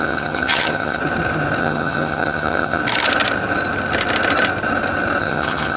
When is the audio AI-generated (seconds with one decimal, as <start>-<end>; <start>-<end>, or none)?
0.0-1.0; 1.6-2.8; 5.2-5.8